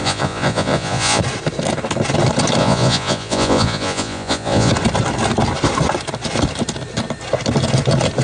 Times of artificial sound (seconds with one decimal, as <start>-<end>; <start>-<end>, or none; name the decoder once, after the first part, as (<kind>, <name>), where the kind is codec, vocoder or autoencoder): 0.0-1.2 (vocoder, Vocos); 2.6-4.7